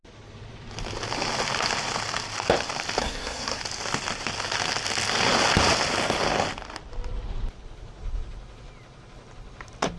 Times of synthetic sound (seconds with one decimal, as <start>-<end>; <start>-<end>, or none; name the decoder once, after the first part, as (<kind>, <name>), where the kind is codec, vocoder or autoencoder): 3.0-3.6 (codec, SNAC)